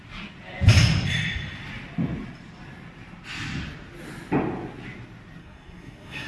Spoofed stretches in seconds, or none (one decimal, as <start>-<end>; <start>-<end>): 5.4-6.3